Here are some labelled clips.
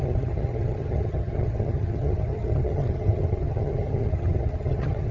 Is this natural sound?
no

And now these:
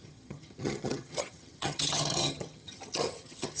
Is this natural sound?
no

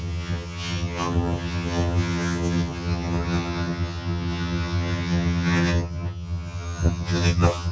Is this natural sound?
no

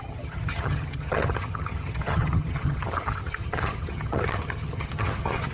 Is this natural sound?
no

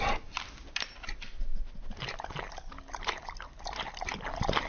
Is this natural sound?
yes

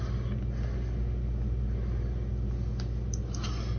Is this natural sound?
yes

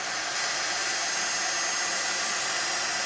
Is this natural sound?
yes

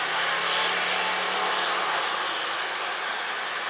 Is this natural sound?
yes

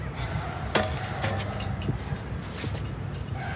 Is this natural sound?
yes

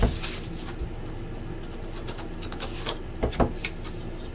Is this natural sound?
yes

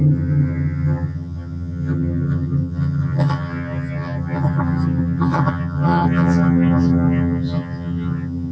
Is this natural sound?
no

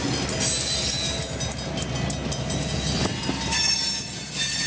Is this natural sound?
yes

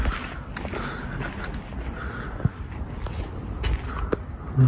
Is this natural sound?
yes